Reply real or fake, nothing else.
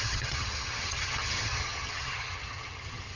fake